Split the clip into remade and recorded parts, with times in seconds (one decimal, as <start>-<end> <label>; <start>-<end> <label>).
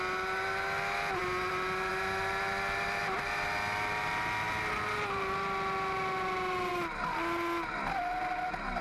0.0-8.8 recorded